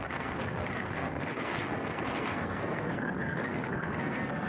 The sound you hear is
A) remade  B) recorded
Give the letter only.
A